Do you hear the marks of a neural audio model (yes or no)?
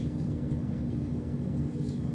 yes